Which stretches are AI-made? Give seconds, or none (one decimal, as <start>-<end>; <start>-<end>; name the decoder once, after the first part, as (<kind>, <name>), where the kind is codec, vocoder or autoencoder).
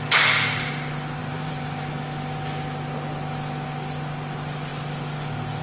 1.2-1.9 (vocoder, BigVGAN v2)